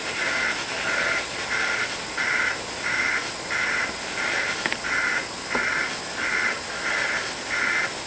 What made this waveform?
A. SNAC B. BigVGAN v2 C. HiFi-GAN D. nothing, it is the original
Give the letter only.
D